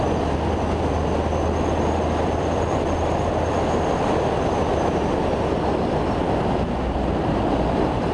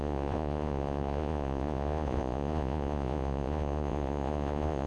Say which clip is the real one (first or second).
first